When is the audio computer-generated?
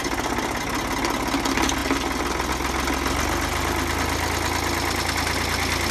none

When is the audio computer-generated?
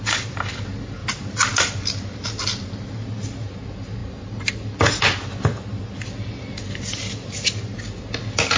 1.0-2.9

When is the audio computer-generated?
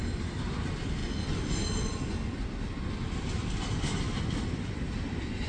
none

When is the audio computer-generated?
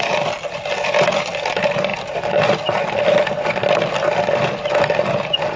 none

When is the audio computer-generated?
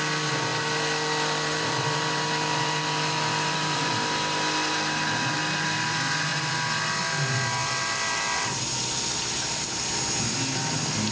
0.5-3.9; 7.6-8.7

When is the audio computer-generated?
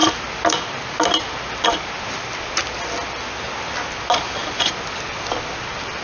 none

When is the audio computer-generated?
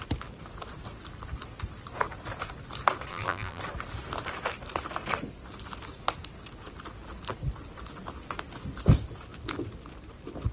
3.1-3.6